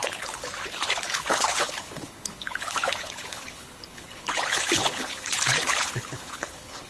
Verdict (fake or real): fake